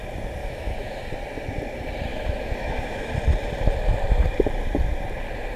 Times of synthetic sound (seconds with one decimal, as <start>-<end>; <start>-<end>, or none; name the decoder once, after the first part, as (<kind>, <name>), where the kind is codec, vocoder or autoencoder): 0.4-1.0 (autoencoder, DAC-VAE); 2.1-3.1